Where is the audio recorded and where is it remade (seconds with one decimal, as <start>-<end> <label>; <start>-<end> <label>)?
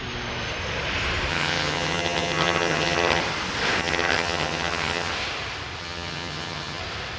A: 0.0-1.3 recorded; 1.3-3.2 remade; 3.2-3.8 recorded; 3.8-5.1 remade; 5.1-5.8 recorded; 5.8-6.8 remade; 6.8-7.2 recorded